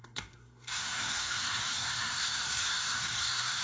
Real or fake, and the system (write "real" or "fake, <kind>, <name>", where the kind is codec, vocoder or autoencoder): fake, codec, SNAC